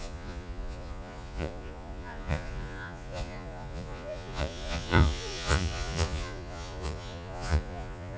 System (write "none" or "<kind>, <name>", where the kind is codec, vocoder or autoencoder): vocoder, Vocos